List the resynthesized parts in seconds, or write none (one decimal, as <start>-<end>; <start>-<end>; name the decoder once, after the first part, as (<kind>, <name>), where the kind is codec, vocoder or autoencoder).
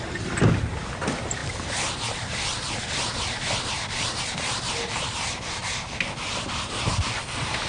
0.0-5.6 (vocoder, BigVGAN v2); 6.8-7.7